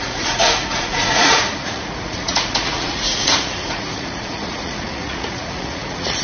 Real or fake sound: fake